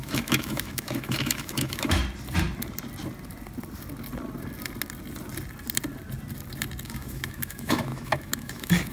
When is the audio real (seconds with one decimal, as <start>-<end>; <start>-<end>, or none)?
2.0-6.8